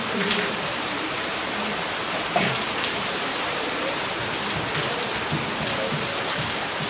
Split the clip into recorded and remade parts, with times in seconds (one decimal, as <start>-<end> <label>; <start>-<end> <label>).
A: 0.0-1.3 remade; 1.3-2.0 recorded; 2.0-4.2 remade; 4.2-6.9 recorded